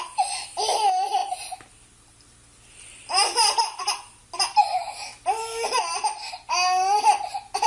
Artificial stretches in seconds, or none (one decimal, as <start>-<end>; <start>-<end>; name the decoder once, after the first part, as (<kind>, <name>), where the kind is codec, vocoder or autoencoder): none